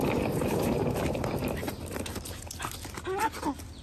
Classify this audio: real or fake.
real